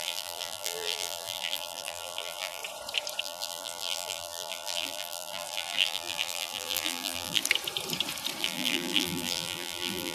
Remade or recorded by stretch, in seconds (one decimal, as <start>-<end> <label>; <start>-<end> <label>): 0.0-2.6 remade; 2.6-3.2 recorded; 3.2-7.4 remade; 7.4-8.4 recorded; 8.4-10.1 remade